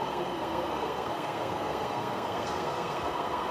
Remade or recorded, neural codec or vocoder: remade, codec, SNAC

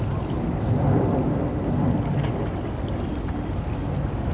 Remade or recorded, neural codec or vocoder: recorded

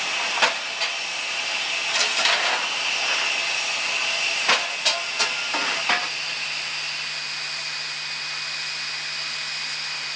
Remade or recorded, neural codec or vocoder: recorded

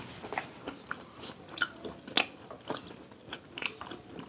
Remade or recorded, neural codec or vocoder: recorded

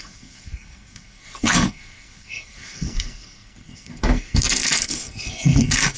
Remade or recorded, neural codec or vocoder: remade, codec, SNAC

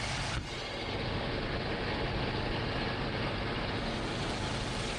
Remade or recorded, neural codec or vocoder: recorded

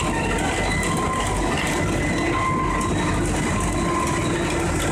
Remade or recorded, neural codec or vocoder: recorded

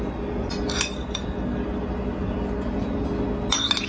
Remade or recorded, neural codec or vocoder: recorded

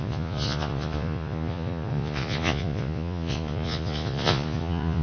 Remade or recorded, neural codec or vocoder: remade, vocoder, Vocos